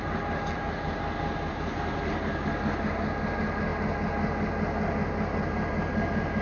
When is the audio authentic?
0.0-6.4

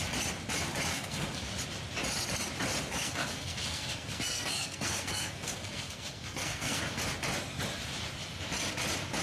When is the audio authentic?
0.0-0.9; 1.5-2.9; 7.0-9.2

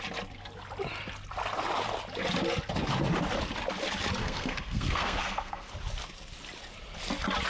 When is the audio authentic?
0.0-4.2; 5.7-7.5

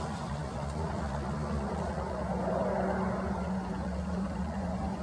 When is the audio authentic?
2.2-3.2